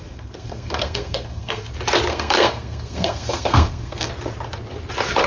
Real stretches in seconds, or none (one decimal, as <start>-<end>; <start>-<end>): 1.7-2.1; 4.1-5.3